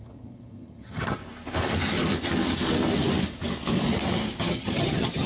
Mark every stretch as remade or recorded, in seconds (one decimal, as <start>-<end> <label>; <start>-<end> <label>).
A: 0.0-1.2 remade; 1.2-4.4 recorded; 4.4-5.3 remade